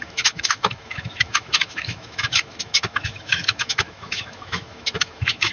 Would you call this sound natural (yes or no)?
no